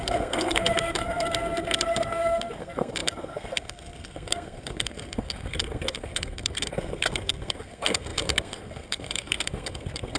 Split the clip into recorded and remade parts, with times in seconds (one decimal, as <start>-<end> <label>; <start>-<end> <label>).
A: 0.0-10.2 remade